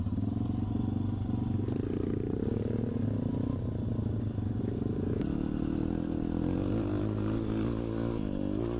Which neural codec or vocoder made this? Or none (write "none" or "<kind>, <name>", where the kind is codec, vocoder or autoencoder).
none